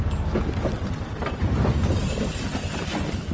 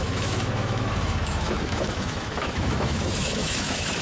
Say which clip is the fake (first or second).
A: second